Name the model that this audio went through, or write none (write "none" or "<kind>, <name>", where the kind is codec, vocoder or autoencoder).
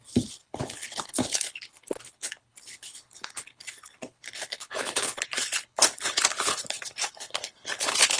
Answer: codec, HILCodec